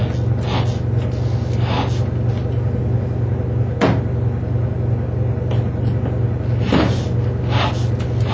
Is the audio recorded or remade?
recorded